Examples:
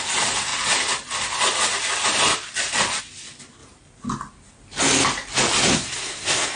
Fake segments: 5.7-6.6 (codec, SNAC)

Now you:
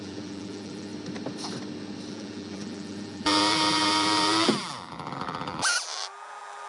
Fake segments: 0.0-0.9 (vocoder, BigVGAN v2); 2.1-6.7

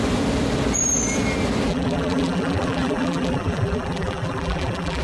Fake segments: 1.7-5.0 (vocoder, BigVGAN v2)

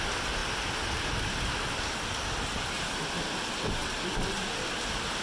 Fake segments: none

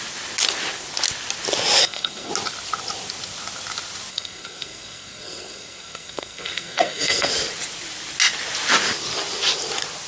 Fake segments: 1.8-2.3 (codec, SNAC); 4.1-7.3

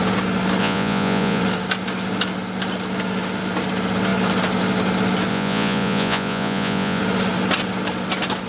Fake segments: 0.6-1.4 (vocoder, Vocos); 5.3-7.0